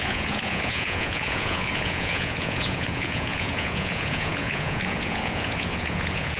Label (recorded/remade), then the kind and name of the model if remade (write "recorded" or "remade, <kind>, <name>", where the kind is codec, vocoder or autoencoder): remade, vocoder, Vocos